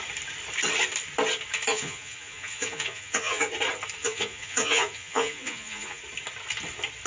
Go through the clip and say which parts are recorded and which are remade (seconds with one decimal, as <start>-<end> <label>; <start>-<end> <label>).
0.0-1.7 recorded; 1.7-3.5 remade; 3.5-4.0 recorded; 4.0-6.0 remade; 6.0-7.1 recorded